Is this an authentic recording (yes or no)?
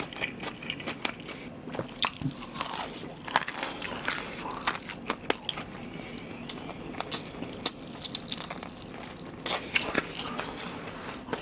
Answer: yes